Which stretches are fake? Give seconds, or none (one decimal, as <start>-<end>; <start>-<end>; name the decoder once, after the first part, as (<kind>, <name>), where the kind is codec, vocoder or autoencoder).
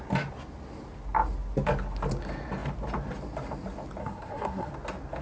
4.0-4.7 (codec, SNAC)